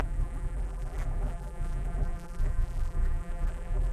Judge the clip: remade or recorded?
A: remade